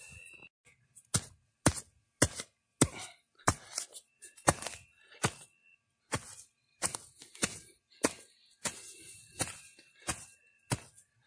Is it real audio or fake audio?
real